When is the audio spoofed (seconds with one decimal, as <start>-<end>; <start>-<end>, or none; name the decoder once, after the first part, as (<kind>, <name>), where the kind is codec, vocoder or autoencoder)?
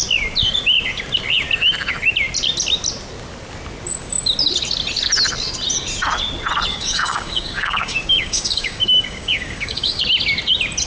6.7-10.0 (codec, DAC)